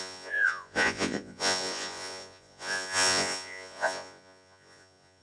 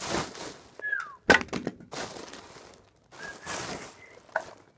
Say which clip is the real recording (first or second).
second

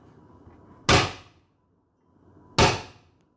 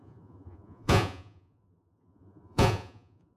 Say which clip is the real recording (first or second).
first